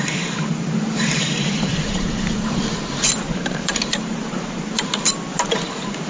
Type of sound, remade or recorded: remade